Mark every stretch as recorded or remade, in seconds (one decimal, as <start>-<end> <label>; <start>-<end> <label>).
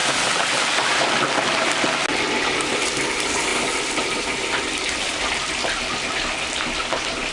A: 0.0-3.5 recorded; 3.5-4.6 remade; 4.6-7.3 recorded